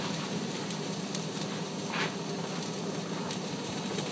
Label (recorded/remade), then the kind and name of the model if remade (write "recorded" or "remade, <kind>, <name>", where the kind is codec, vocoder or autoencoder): remade, vocoder, BigVGAN v2